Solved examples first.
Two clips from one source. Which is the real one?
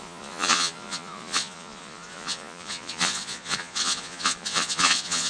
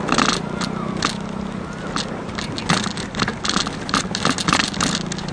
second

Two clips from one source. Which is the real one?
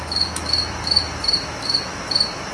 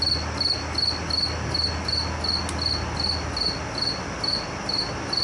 second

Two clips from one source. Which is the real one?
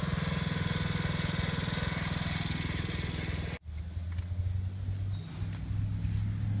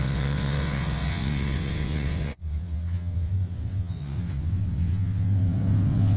first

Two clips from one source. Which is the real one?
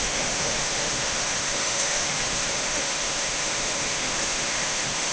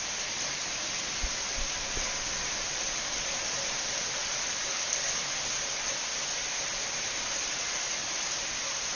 second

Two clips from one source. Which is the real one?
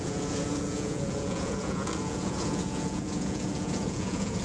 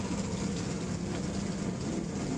second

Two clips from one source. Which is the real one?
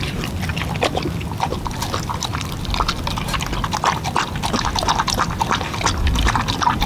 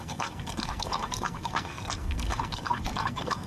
first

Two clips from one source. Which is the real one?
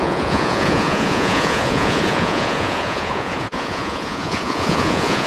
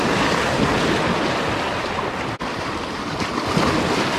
second